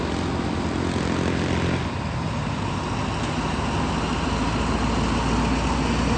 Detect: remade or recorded recorded